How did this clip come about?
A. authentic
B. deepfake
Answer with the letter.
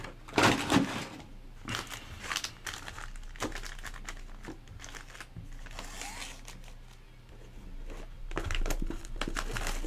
A